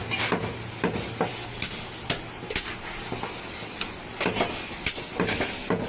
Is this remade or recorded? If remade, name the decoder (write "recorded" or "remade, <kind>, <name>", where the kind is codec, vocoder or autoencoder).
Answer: recorded